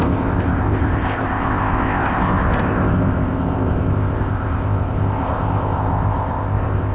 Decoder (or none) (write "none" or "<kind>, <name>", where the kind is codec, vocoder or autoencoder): codec, ZipCodec